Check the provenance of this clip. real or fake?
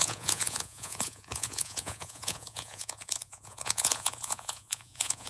fake